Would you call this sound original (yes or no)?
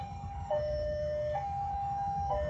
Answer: no